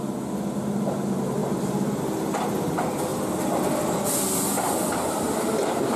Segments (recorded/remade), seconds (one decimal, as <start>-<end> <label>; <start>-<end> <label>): 0.0-6.0 recorded